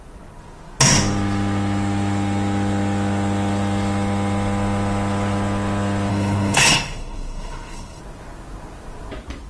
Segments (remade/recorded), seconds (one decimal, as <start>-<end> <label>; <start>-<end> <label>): 0.0-6.1 recorded; 6.1-8.0 remade; 8.0-9.5 recorded